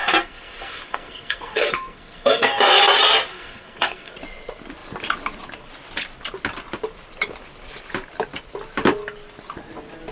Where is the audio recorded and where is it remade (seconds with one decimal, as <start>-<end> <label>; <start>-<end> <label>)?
0.0-2.8 remade; 2.8-3.3 recorded; 3.3-4.1 remade; 4.1-10.1 recorded